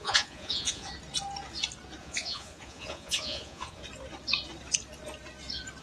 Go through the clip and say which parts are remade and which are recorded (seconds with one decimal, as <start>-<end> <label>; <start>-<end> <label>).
0.0-0.9 remade; 0.9-2.0 recorded; 2.0-3.8 remade; 3.8-5.8 recorded